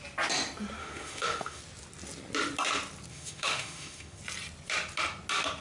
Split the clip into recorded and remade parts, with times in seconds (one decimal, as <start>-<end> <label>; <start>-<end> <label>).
0.0-0.8 recorded; 0.8-1.6 remade; 1.6-3.1 recorded; 3.1-4.2 remade; 4.2-5.6 recorded